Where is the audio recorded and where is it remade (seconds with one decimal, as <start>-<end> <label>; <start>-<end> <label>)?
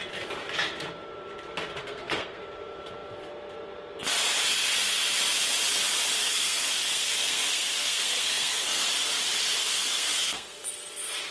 0.0-1.8 recorded; 1.8-2.4 remade; 2.4-6.2 recorded; 6.2-8.9 remade; 8.9-9.6 recorded; 9.6-10.6 remade; 10.6-11.3 recorded